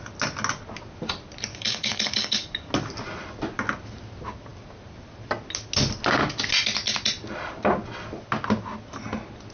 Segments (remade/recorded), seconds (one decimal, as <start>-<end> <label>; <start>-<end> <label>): 0.0-1.5 recorded; 1.5-2.7 remade; 2.7-9.5 recorded